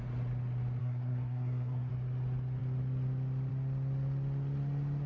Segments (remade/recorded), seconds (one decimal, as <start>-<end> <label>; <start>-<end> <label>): 0.0-0.8 recorded; 0.8-1.9 remade; 1.9-5.1 recorded